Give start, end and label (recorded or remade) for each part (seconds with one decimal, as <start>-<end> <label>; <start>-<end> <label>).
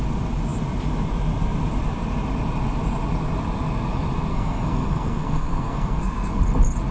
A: 0.0-4.3 recorded; 4.3-6.4 remade; 6.4-6.9 recorded